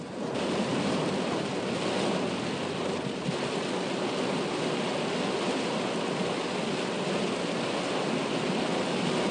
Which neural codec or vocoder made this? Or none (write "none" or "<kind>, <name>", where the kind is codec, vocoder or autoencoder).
none